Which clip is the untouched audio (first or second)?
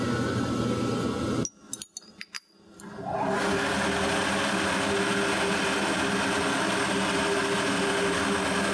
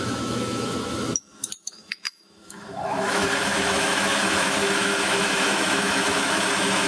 first